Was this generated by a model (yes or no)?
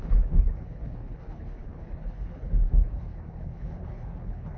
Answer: yes